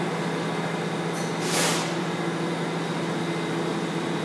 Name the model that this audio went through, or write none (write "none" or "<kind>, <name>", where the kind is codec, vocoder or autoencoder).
none